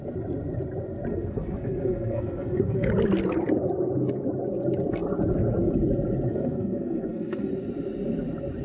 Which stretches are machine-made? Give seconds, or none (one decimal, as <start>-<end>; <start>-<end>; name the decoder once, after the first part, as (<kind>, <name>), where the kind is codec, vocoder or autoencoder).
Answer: 1.1-2.9 (codec, SNAC); 6.3-7.5